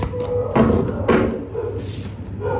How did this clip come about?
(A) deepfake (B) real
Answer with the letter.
B